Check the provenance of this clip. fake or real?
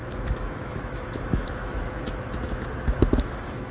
fake